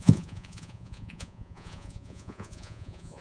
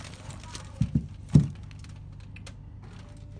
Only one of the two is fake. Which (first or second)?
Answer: first